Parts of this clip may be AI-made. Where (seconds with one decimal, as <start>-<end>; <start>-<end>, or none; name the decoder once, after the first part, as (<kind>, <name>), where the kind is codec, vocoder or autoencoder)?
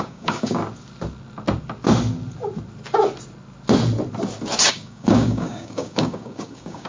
0.0-0.6 (codec, DAC); 4.7-6.9